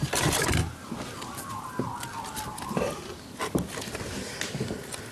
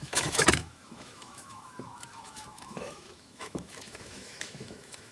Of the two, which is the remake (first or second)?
second